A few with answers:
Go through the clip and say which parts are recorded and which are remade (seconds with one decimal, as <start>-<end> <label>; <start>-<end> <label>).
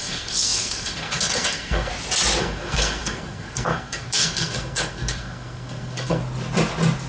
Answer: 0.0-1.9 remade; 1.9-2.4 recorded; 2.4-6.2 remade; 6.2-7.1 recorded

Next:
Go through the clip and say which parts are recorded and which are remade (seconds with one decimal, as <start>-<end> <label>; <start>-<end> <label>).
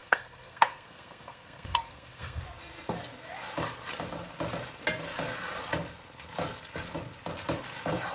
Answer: 0.0-2.4 remade; 2.4-8.1 recorded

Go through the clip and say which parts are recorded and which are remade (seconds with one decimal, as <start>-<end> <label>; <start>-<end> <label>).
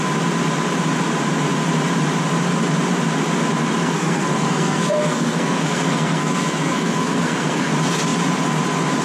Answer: 0.0-3.8 recorded; 3.8-7.7 remade; 7.7-9.0 recorded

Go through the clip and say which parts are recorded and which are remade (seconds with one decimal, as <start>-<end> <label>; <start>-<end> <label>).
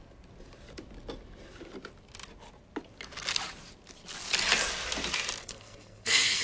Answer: 0.0-5.4 recorded; 5.4-6.4 remade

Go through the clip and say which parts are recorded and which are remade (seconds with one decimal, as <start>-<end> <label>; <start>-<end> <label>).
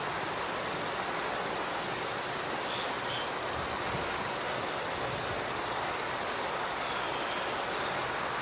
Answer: 0.0-8.4 recorded